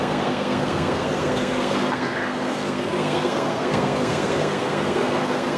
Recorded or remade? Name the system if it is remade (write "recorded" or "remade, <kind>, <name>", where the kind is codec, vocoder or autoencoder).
remade, codec, SNAC